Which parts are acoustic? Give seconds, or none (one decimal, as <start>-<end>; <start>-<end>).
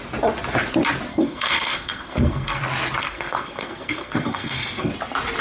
0.0-1.1; 2.6-3.0; 4.9-5.4